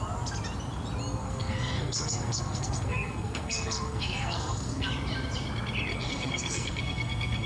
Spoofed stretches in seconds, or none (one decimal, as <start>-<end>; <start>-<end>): 1.2-4.9; 5.9-7.5